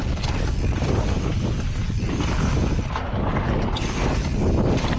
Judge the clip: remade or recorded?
recorded